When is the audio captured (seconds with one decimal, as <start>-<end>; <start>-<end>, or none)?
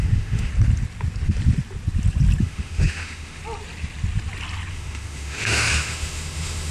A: 0.5-2.4; 3.4-4.7